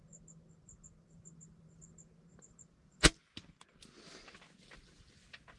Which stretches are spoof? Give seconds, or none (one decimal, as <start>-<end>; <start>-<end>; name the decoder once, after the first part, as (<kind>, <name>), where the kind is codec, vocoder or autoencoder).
none